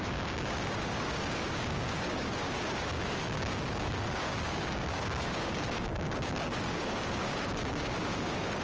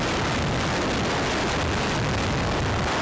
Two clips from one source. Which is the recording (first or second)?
second